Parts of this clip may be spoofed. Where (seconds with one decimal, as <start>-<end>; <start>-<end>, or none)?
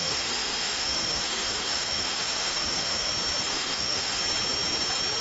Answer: 0.0-3.1; 3.5-4.2